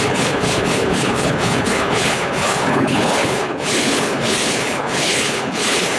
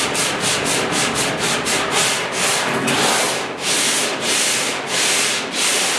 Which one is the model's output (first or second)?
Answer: first